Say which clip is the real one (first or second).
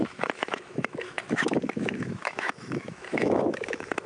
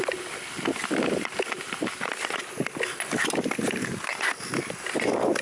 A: second